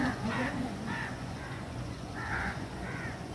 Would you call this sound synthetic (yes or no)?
yes